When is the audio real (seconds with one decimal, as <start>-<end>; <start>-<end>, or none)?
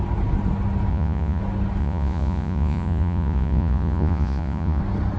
0.0-0.9; 1.4-1.8; 4.8-5.2